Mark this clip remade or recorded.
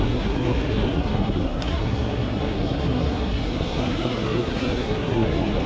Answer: remade